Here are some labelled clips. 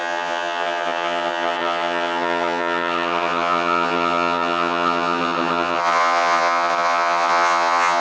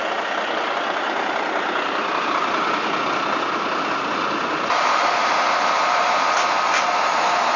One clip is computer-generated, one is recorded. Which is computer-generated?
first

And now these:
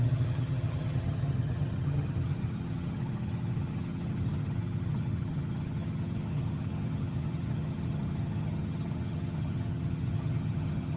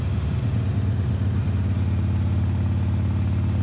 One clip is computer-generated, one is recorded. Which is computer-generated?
first